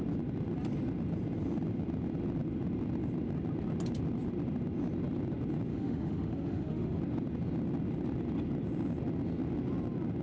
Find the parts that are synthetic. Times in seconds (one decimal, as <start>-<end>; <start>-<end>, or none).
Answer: 5.7-7.0